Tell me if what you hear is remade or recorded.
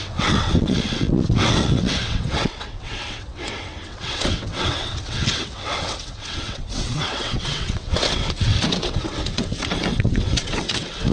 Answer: remade